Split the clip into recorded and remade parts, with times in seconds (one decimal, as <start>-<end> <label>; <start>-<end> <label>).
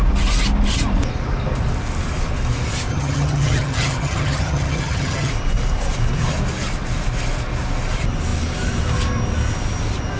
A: 0.0-2.9 recorded; 2.9-5.3 remade; 5.3-10.2 recorded